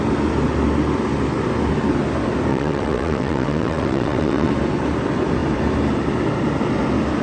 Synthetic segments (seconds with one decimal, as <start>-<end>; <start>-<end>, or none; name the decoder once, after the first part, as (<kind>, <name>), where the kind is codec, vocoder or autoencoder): 2.5-4.5 (vocoder, WaveNeXt)

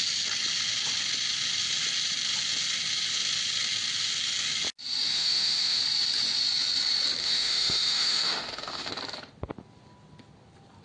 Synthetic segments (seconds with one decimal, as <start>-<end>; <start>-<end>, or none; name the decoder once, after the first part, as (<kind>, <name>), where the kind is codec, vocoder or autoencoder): 5.1-5.8 (autoencoder, DAC-VAE); 7.2-8.9

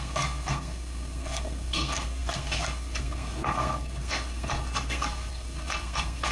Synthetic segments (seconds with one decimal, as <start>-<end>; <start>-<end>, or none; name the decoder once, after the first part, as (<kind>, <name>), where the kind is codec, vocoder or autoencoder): 0.0-6.3 (codec, SNAC)

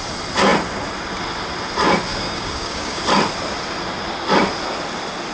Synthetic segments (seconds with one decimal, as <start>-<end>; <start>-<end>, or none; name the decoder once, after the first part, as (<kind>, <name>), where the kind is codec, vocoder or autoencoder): 2.1-3.0 (codec, DAC)

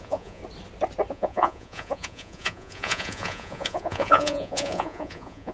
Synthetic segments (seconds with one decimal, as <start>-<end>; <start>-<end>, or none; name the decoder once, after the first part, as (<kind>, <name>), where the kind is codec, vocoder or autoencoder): 0.0-0.4 (vocoder, Vocos); 1.1-5.5

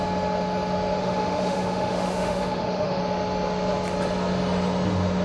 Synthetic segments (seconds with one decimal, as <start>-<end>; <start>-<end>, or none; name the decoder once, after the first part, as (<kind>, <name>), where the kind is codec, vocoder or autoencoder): 1.0-3.0 (autoencoder, DAC-VAE)